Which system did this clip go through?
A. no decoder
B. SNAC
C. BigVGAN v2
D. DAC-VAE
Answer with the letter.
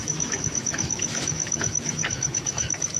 D